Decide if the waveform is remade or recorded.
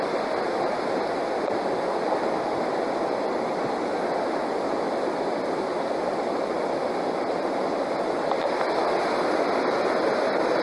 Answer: recorded